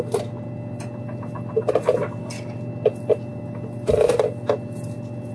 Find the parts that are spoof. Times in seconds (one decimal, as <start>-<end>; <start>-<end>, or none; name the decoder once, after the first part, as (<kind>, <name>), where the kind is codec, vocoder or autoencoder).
none